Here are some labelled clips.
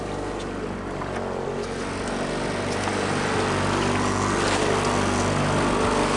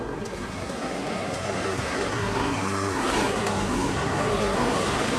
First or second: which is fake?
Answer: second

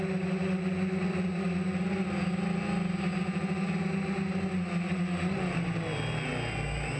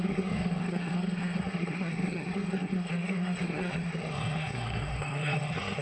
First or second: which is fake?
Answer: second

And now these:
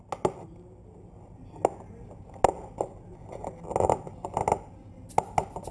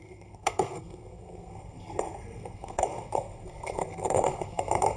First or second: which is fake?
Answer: second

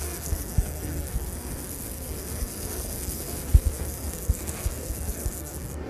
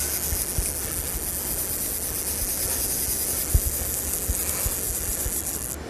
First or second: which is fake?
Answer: first